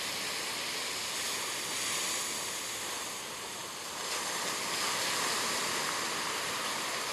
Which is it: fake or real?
fake